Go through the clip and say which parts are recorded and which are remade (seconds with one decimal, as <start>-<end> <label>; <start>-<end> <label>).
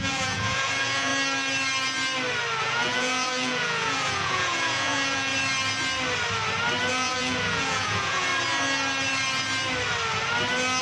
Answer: 0.0-1.1 remade; 1.1-2.6 recorded; 2.6-5.3 remade; 5.3-6.9 recorded; 6.9-8.3 remade; 8.3-10.8 recorded